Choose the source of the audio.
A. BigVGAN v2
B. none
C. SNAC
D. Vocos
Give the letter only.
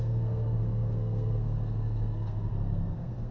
C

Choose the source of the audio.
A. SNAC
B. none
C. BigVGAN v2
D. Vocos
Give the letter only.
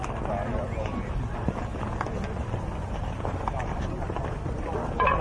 B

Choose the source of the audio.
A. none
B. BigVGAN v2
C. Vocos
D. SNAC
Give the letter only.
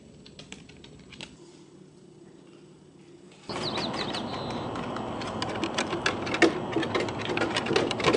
A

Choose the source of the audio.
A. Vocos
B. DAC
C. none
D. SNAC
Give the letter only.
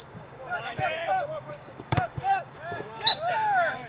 B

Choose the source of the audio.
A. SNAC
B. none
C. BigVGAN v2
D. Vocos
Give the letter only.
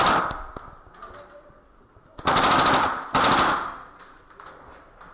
B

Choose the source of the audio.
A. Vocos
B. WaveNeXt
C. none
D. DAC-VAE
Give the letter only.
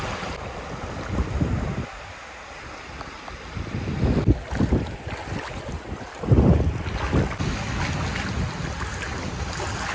C